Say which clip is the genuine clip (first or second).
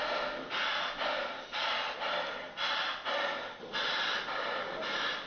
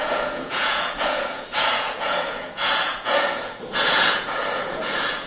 first